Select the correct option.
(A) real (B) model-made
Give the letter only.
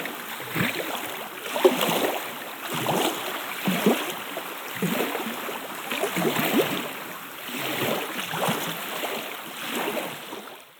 A